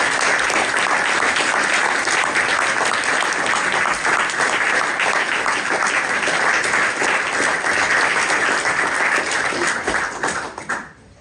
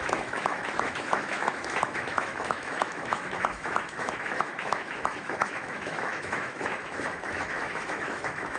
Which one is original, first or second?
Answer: first